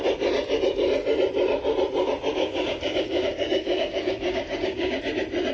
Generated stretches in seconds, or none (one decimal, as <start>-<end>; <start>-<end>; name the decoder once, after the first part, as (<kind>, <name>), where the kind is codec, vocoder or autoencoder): 2.4-5.0 (codec, DAC)